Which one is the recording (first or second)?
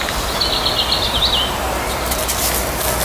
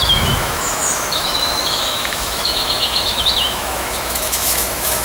first